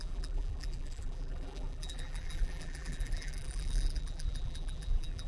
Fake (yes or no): yes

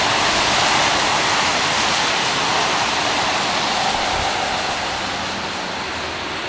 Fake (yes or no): yes